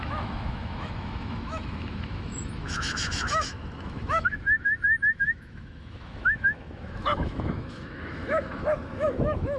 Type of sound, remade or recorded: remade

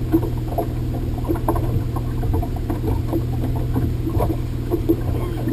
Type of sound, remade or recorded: recorded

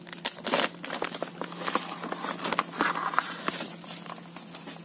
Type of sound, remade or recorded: recorded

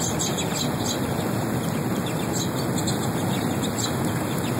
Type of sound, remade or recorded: recorded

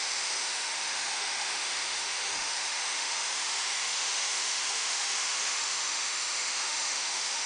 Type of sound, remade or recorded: remade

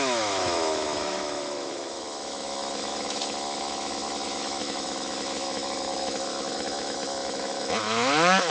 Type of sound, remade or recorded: remade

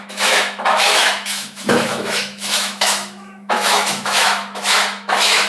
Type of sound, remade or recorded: remade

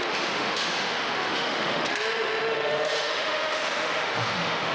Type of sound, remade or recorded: remade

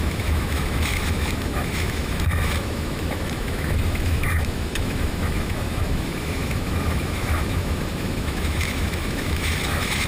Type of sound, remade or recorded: remade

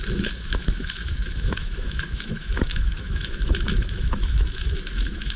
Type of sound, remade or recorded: remade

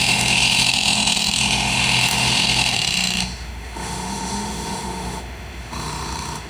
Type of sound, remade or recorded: remade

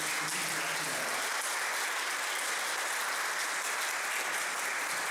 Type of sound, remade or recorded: recorded